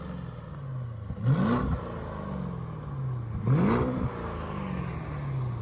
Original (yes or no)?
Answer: yes